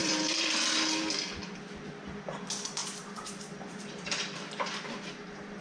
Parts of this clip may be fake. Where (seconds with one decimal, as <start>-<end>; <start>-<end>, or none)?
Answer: 0.0-0.5; 2.8-4.7